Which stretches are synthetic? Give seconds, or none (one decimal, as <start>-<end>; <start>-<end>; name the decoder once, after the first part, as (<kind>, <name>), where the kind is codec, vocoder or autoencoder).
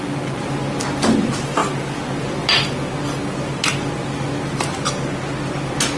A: none